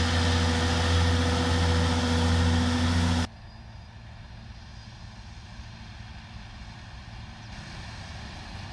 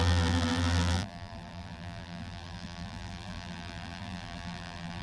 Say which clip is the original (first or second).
first